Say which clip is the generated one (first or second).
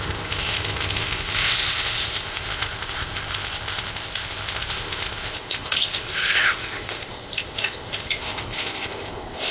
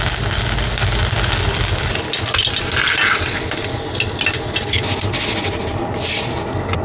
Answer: first